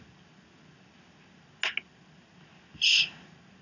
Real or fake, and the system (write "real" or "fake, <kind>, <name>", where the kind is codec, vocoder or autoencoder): real